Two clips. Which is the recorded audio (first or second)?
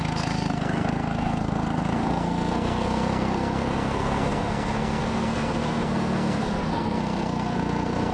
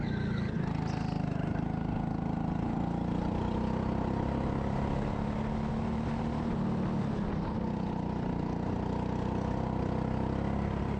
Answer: second